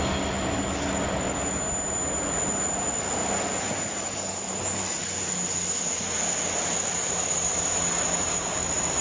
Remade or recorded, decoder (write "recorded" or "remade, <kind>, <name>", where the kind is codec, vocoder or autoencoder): recorded